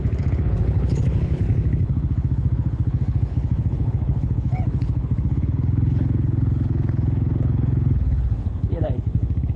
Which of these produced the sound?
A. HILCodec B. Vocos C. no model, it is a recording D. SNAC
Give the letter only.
A